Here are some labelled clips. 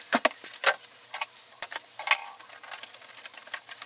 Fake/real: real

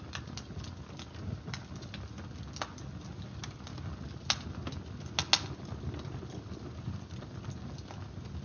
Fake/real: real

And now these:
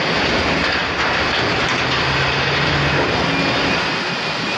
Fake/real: real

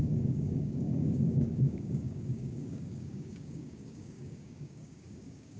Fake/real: fake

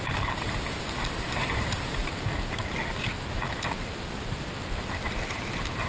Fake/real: real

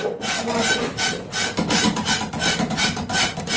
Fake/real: real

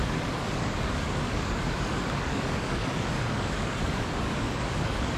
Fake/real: fake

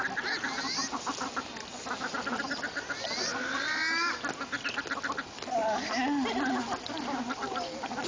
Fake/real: real